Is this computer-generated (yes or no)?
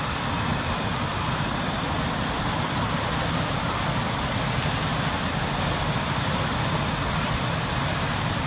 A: yes